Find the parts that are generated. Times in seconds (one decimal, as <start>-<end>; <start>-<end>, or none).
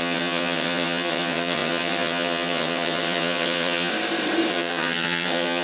0.0-3.9; 4.5-5.6